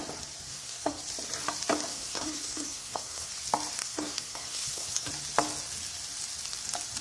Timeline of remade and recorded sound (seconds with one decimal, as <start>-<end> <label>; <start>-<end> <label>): 0.0-0.5 recorded; 0.5-1.0 remade; 1.0-1.9 recorded; 1.9-3.3 remade; 3.3-3.8 recorded; 3.8-5.1 remade; 5.1-7.0 recorded